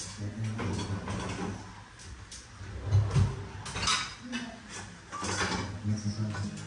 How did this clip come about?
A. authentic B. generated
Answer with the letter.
A